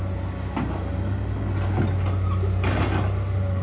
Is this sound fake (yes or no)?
no